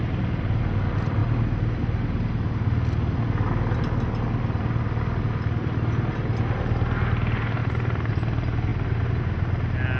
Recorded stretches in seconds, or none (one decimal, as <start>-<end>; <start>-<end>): 0.0-10.0